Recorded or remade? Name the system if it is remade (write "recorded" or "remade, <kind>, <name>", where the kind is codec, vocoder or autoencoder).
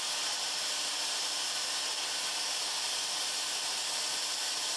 recorded